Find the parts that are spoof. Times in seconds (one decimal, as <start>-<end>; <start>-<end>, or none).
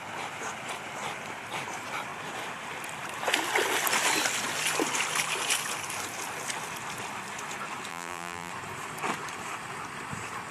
7.9-8.5